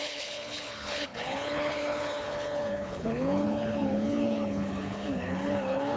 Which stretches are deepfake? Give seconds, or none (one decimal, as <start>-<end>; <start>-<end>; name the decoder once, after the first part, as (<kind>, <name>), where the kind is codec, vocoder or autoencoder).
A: 0.0-6.0 (codec, HILCodec)